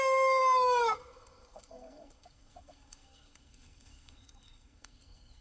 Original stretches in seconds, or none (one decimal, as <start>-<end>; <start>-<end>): none